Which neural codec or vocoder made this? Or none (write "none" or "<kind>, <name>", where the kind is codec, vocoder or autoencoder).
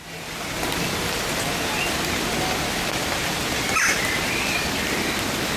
none